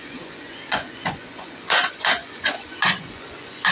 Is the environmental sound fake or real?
fake